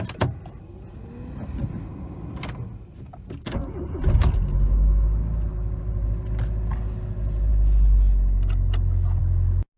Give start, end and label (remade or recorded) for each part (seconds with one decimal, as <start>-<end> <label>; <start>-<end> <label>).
0.0-9.8 recorded